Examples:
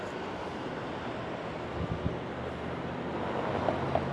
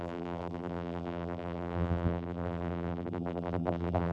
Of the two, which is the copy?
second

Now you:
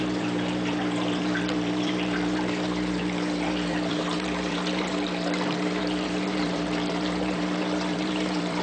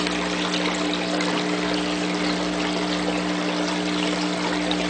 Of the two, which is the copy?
first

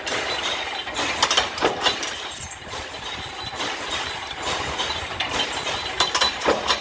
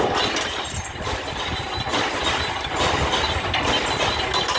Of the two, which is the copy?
first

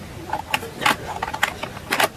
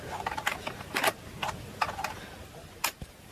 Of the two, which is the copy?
second